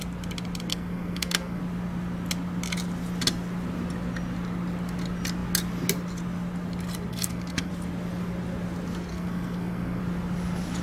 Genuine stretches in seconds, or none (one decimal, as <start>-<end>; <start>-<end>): 0.0-0.7; 1.6-7.1; 7.7-9.1; 10.0-10.8